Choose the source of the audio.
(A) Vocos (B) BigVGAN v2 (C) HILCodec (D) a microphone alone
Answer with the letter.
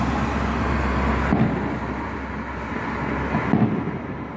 D